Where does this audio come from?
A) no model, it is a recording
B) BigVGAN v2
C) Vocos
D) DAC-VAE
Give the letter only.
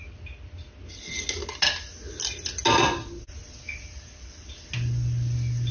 A